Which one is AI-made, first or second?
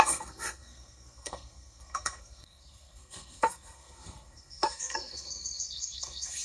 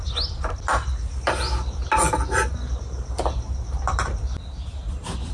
first